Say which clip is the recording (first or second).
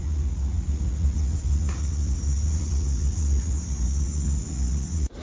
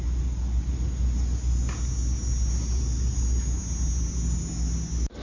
second